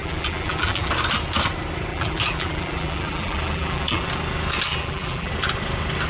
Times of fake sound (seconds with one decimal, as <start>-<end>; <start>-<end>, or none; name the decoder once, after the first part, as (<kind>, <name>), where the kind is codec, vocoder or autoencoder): 0.0-0.9 (vocoder, BigVGAN v2); 1.9-4.1; 4.7-5.3